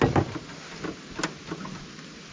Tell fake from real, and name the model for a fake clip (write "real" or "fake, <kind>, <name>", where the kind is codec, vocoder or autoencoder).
real